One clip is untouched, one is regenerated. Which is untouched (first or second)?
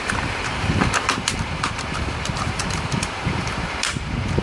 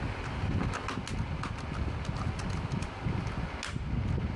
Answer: second